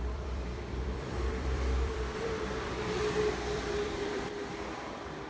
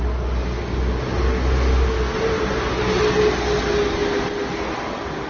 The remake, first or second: first